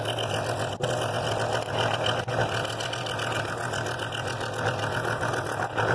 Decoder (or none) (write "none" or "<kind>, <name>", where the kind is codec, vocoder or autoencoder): none